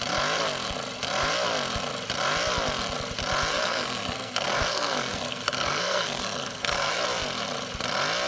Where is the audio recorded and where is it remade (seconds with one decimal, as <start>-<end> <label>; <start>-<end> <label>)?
0.0-3.5 recorded; 3.5-7.0 remade; 7.0-8.3 recorded